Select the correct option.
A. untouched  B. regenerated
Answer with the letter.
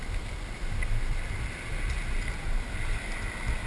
A